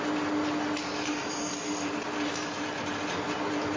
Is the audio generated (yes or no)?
no